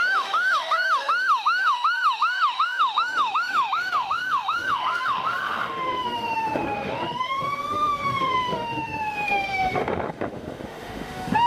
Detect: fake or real fake